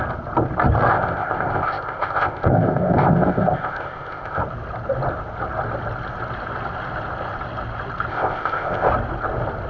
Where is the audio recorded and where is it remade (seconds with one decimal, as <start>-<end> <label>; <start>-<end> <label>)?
0.0-0.9 recorded; 0.9-4.4 remade; 4.4-8.1 recorded; 8.1-8.9 remade; 8.9-9.7 recorded